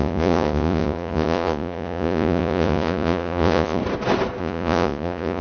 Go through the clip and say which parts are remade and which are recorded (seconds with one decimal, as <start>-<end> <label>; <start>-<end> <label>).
0.0-3.8 remade; 3.8-4.4 recorded; 4.4-5.4 remade